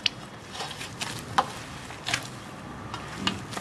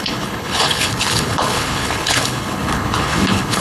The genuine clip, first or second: first